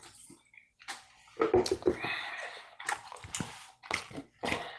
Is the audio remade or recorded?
recorded